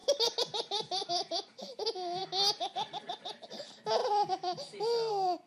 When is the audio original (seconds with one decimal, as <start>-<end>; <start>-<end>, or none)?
1.1-5.5